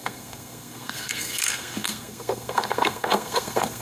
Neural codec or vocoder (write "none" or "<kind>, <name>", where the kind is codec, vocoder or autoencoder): codec, SNAC